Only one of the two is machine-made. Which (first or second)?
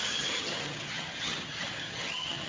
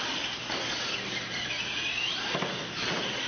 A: first